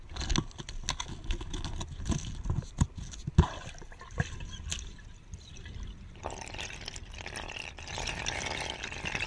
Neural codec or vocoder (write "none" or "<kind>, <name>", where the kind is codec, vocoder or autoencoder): none